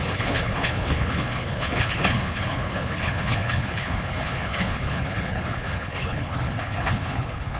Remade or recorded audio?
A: remade